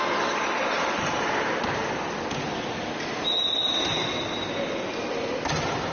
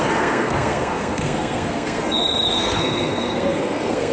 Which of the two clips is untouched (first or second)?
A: first